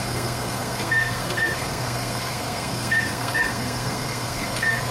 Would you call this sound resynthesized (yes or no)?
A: yes